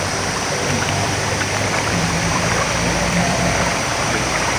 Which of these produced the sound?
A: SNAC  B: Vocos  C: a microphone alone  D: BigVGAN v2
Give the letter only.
D